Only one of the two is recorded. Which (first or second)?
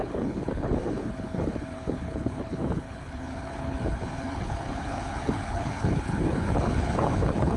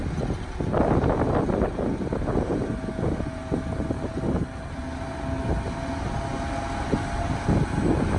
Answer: second